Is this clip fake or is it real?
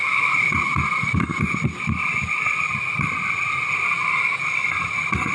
real